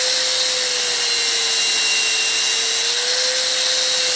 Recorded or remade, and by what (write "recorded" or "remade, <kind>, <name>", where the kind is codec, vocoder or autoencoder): recorded